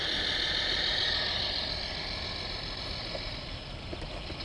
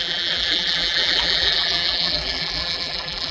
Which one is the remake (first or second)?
second